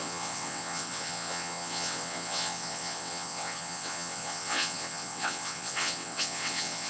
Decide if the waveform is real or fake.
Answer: fake